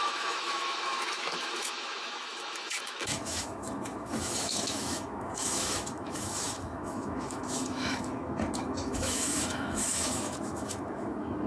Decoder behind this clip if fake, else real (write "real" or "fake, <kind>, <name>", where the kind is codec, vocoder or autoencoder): fake, autoencoder, DAC-VAE